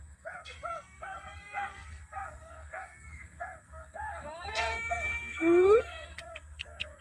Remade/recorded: remade